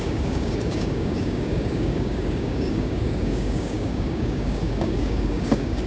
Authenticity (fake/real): fake